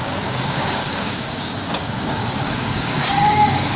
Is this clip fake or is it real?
fake